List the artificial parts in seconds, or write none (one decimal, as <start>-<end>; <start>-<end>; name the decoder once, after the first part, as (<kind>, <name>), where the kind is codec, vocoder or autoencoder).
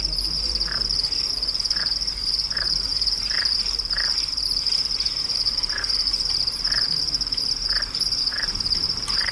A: 0.0-9.3 (vocoder, BigVGAN v2)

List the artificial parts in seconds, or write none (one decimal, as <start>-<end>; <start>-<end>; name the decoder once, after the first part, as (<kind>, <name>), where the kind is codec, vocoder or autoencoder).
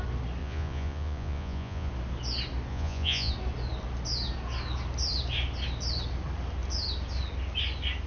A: 0.4-1.9 (vocoder, Vocos); 2.7-3.3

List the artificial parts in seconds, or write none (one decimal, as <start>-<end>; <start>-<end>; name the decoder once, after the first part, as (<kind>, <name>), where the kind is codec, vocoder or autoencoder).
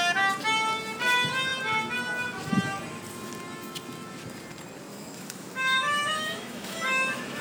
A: 4.9-7.4 (autoencoder, DAC-VAE)